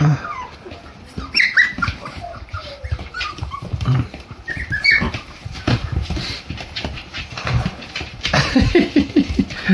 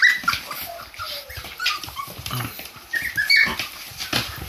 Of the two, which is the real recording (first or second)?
second